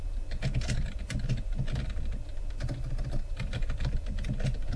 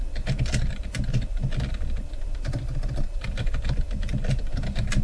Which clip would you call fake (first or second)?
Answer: second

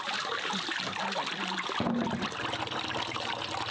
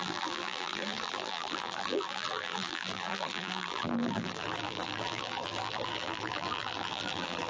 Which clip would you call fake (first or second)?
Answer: second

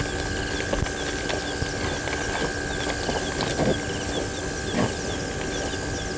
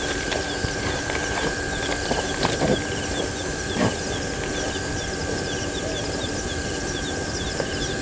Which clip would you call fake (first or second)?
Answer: second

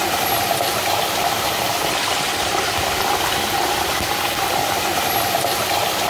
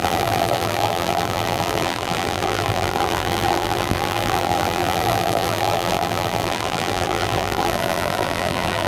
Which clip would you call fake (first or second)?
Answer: second